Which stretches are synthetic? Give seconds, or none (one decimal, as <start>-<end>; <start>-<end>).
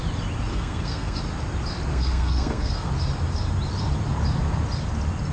0.5-1.2; 1.9-2.9